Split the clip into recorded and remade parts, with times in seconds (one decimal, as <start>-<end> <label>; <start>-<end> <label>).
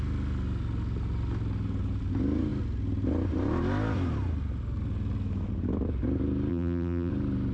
0.0-6.5 recorded; 6.5-7.1 remade; 7.1-7.5 recorded